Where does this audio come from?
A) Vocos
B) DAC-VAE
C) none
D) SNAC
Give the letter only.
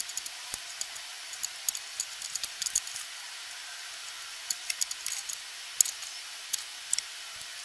C